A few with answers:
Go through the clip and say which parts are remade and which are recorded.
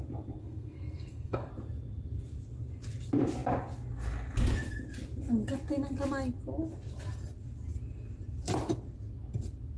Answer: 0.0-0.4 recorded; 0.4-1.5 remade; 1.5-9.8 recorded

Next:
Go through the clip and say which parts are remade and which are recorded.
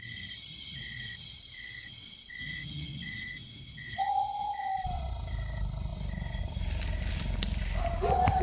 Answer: 0.0-0.8 recorded; 0.8-4.7 remade; 4.7-8.4 recorded